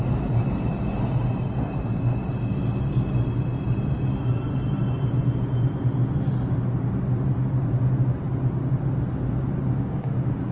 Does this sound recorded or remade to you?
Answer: recorded